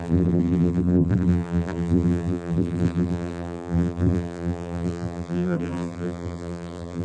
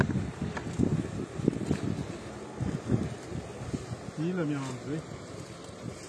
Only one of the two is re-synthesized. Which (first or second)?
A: first